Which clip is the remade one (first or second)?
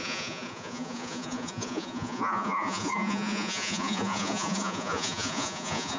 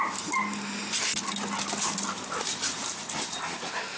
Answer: first